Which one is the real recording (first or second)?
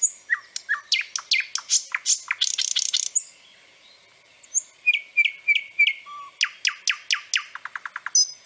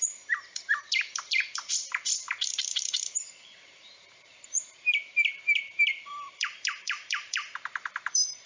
first